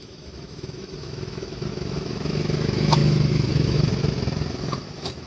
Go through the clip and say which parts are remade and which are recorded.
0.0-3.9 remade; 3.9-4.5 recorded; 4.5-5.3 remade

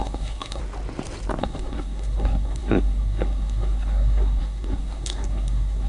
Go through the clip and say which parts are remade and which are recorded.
0.0-0.6 remade; 0.6-1.4 recorded; 1.4-5.9 remade

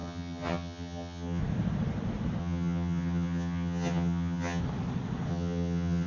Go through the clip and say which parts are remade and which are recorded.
0.0-1.4 remade; 1.4-2.4 recorded; 2.4-4.6 remade; 4.6-5.3 recorded; 5.3-6.1 remade

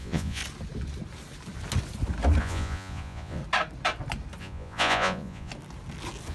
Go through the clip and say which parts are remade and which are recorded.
0.0-0.4 remade; 0.4-2.4 recorded; 2.4-3.4 remade; 3.4-4.4 recorded; 4.4-5.5 remade; 5.5-6.3 recorded

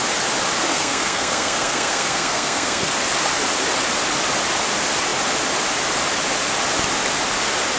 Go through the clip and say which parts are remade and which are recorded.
0.0-0.7 recorded; 0.7-2.9 remade; 2.9-7.8 recorded

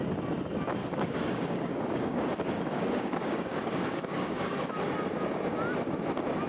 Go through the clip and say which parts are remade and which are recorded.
0.0-0.8 recorded; 0.8-4.7 remade; 4.7-6.5 recorded

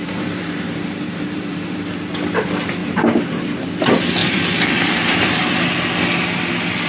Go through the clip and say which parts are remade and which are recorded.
0.0-2.0 remade; 2.0-2.8 recorded; 2.8-3.7 remade; 3.7-4.2 recorded; 4.2-5.5 remade; 5.5-6.9 recorded